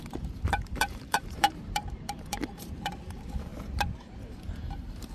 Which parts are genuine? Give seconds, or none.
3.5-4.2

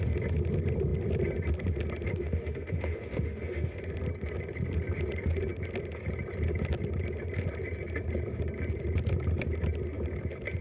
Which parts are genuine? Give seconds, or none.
0.0-2.2; 3.8-10.6

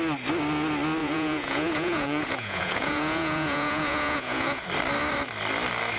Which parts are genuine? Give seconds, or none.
0.0-1.0; 4.6-6.0

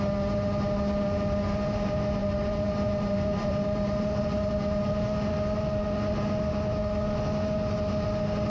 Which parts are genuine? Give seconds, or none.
0.0-2.2; 4.9-8.5

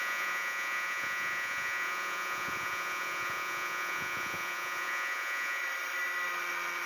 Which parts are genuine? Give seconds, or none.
5.6-6.9

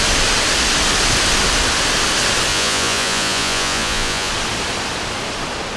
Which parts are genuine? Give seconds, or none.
0.0-2.5; 4.3-5.8

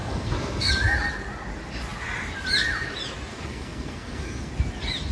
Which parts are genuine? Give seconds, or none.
0.7-3.3; 4.5-5.1

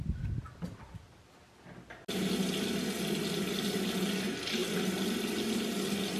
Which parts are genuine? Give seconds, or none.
0.0-6.2